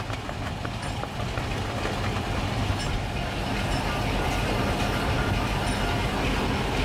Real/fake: real